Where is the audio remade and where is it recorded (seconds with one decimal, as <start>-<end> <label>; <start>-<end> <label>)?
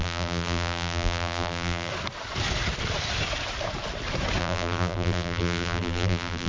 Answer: 0.0-1.9 remade; 1.9-4.4 recorded; 4.4-6.5 remade